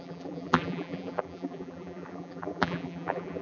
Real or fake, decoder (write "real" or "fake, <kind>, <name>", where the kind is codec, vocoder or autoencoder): fake, vocoder, BigVGAN v2